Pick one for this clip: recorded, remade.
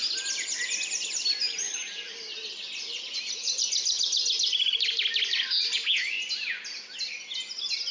recorded